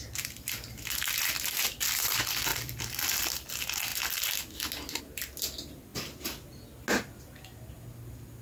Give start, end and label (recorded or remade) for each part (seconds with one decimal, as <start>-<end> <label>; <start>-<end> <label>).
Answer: 0.0-2.5 recorded; 2.5-3.5 remade; 3.5-5.9 recorded; 5.9-6.4 remade; 6.4-8.4 recorded